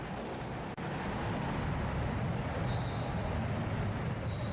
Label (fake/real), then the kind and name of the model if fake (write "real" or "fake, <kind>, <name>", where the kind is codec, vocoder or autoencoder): real